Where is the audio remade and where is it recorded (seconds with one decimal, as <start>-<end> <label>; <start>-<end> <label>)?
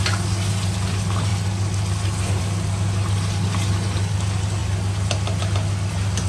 0.0-6.3 recorded